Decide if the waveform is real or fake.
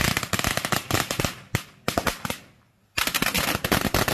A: real